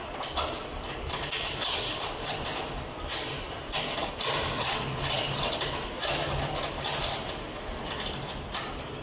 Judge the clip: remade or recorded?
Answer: recorded